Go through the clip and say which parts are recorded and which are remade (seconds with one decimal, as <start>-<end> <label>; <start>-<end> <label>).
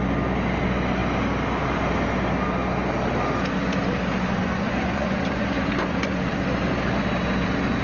0.0-4.4 recorded; 4.4-6.2 remade; 6.2-7.8 recorded